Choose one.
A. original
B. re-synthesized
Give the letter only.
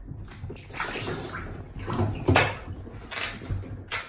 A